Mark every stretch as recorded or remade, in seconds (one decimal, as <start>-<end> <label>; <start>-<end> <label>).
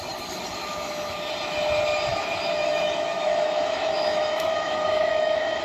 0.0-0.6 recorded; 0.6-1.3 remade; 1.3-2.1 recorded; 2.1-5.6 remade